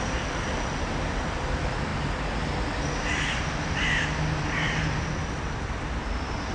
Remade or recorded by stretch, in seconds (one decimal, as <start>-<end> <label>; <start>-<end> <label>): 0.0-6.5 recorded